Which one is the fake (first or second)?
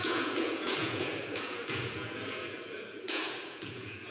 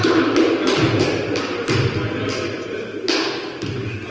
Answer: first